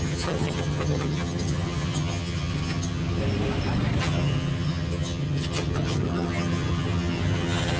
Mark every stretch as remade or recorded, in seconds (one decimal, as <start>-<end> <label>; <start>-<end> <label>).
0.0-3.2 remade; 3.2-4.0 recorded; 4.0-7.8 remade